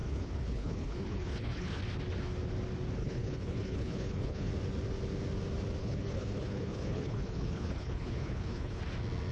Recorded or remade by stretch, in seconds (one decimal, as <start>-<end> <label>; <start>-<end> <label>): 0.0-1.8 remade; 1.8-3.0 recorded; 3.0-4.5 remade; 4.5-5.8 recorded; 5.8-8.8 remade; 8.8-9.3 recorded